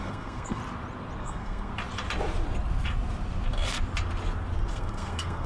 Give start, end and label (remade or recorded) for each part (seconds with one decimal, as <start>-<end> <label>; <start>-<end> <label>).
0.0-0.6 remade; 0.6-1.2 recorded; 1.2-1.7 remade; 1.7-4.7 recorded; 4.7-5.5 remade